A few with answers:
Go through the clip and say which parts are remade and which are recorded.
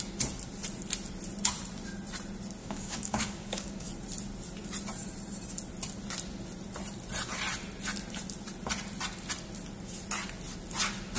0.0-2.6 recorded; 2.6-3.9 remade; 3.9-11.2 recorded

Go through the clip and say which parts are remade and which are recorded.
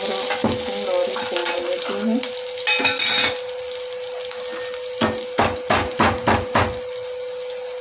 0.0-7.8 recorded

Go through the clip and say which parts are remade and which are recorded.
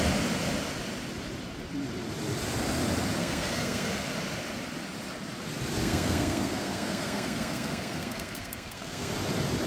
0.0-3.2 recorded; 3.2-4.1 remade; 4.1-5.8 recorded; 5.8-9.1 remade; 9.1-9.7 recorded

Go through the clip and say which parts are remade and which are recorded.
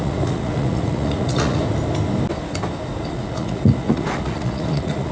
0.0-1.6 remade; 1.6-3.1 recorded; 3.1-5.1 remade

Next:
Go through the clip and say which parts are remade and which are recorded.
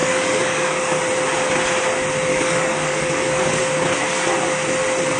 0.0-1.0 remade; 1.0-2.3 recorded; 2.3-3.6 remade; 3.6-5.2 recorded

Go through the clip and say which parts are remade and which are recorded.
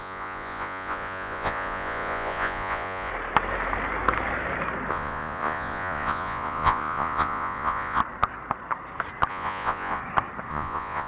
0.0-3.1 remade; 3.1-4.9 recorded; 4.9-8.0 remade; 8.0-9.3 recorded; 9.3-10.0 remade; 10.0-10.5 recorded; 10.5-11.1 remade